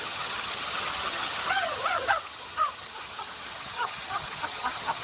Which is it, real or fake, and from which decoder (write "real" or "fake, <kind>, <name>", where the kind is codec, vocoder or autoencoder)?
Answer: fake, vocoder, HiFi-GAN